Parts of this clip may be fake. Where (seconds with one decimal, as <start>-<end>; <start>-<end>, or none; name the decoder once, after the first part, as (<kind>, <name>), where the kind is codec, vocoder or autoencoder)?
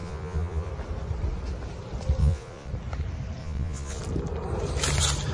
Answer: 0.0-0.7 (vocoder, Vocos); 2.2-2.7; 3.4-4.0